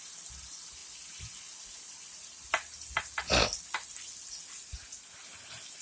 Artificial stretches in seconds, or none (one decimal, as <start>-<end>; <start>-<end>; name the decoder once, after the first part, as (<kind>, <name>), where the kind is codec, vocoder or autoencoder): none